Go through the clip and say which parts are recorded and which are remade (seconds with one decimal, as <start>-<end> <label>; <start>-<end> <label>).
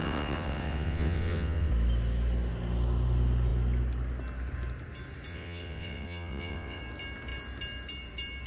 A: 0.0-1.7 remade; 1.7-5.3 recorded; 5.3-6.8 remade; 6.8-8.5 recorded